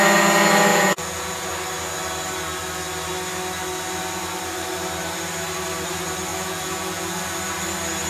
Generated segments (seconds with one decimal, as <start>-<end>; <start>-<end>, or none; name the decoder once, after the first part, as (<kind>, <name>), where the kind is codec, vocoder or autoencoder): 0.7-1.5 (vocoder, Vocos); 6.3-7.2